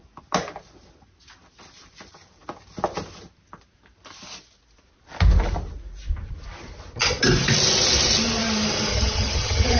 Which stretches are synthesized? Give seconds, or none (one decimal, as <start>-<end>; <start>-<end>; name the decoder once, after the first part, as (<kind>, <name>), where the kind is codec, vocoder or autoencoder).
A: 8.9-9.8 (vocoder, HiFi-GAN)